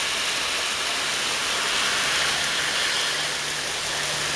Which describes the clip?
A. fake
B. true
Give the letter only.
B